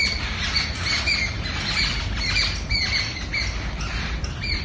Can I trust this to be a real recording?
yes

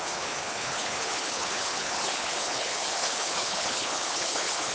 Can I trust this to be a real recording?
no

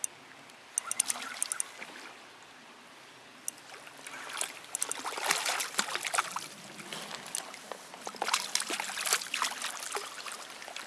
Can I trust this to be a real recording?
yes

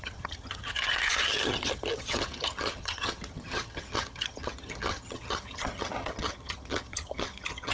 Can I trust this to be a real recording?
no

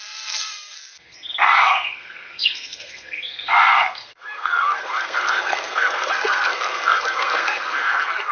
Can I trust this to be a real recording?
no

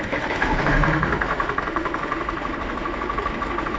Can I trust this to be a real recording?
no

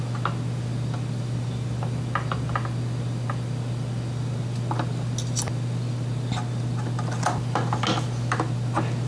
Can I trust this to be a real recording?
yes